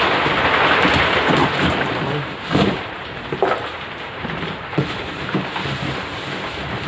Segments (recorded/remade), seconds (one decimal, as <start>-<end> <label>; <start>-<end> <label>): 0.0-1.4 recorded; 1.4-5.5 remade; 5.5-6.9 recorded